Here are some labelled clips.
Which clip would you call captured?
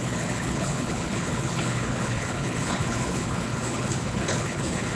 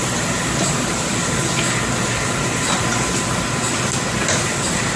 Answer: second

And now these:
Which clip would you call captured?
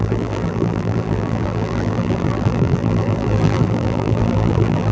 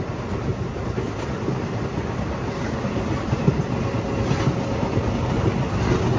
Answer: second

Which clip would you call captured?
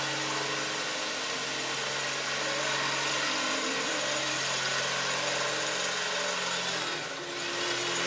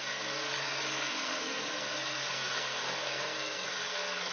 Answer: first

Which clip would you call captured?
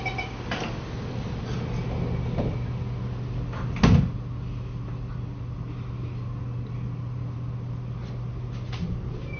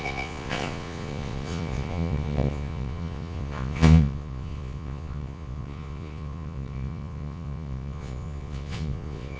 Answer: first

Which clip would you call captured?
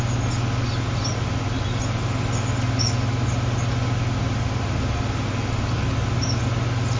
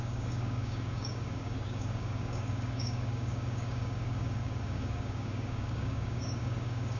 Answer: first